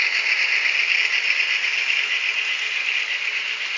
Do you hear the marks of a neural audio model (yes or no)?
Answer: no